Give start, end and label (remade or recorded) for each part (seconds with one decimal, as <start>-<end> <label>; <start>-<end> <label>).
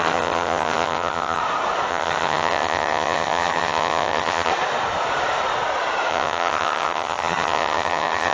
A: 0.0-1.4 remade; 1.4-1.9 recorded; 1.9-4.5 remade; 4.5-6.1 recorded; 6.1-8.3 remade